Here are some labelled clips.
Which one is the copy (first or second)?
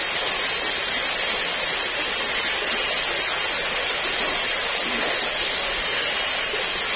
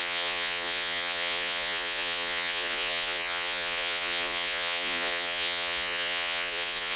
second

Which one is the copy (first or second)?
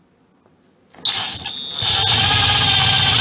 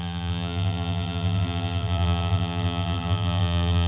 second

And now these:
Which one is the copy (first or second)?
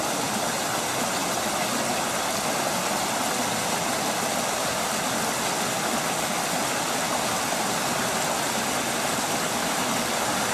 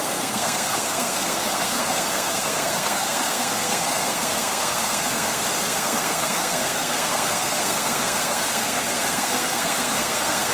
second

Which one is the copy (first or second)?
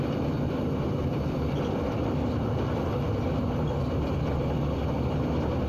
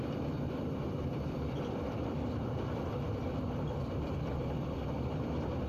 second